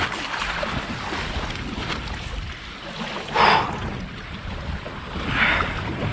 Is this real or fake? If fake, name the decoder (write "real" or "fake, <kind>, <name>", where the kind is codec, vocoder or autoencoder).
real